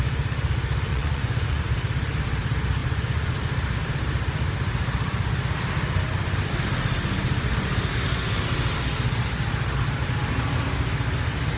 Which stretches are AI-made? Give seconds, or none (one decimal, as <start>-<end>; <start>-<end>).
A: 0.9-1.6; 2.8-3.4